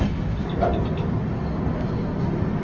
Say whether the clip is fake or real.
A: real